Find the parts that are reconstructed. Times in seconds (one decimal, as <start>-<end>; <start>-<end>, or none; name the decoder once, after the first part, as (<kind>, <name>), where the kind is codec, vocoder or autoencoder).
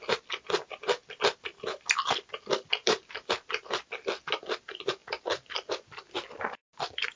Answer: 2.8-3.3 (vocoder, BigVGAN v2)